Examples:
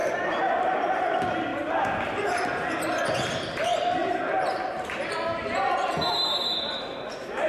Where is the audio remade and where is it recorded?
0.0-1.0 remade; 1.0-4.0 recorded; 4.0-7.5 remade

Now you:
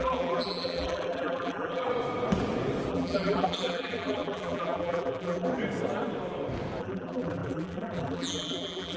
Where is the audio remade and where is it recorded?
0.0-1.9 remade; 1.9-2.9 recorded; 2.9-5.5 remade; 5.5-6.8 recorded; 6.8-9.0 remade

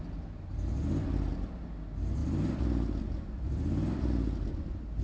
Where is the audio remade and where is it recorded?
0.0-2.2 recorded; 2.2-5.0 remade

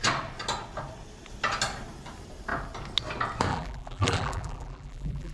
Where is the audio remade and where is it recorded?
0.0-3.5 recorded; 3.5-5.3 remade

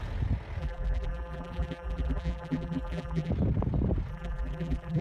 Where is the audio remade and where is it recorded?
0.0-0.6 recorded; 0.6-3.3 remade; 3.3-4.1 recorded; 4.1-5.0 remade